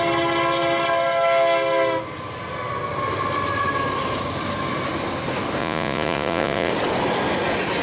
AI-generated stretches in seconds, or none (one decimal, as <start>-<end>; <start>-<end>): 5.6-6.7